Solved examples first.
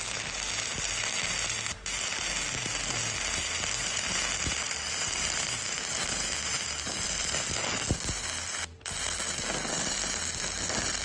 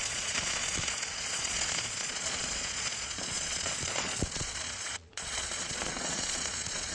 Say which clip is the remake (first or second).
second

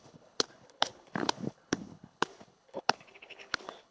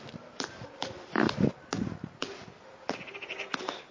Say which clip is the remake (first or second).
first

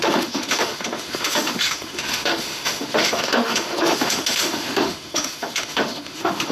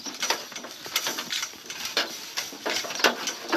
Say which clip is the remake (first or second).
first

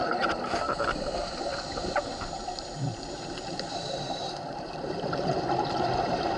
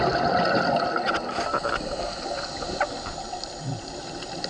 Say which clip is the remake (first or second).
first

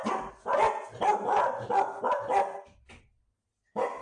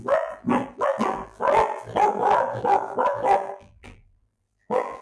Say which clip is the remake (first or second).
second